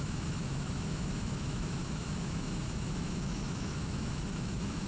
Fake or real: fake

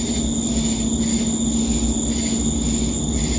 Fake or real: real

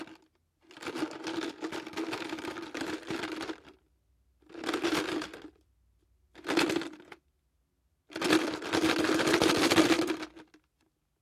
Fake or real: real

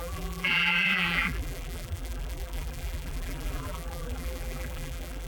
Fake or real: fake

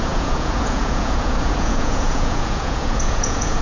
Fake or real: fake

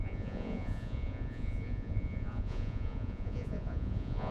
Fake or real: fake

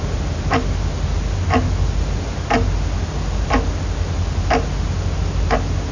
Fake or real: real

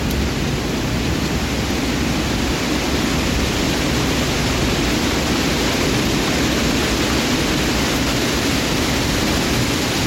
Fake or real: real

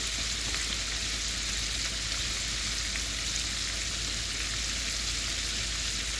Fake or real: real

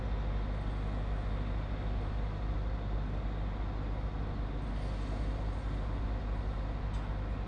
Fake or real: real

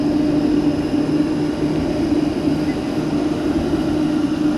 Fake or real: real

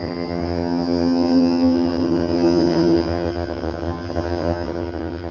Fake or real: fake